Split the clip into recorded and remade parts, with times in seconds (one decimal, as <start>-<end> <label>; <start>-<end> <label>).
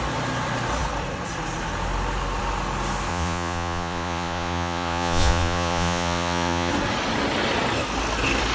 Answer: 0.0-3.1 recorded; 3.1-6.7 remade; 6.7-8.5 recorded